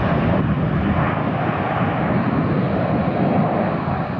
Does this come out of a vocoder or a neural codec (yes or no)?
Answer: no